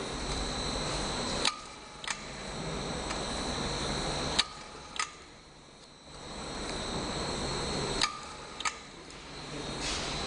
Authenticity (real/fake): fake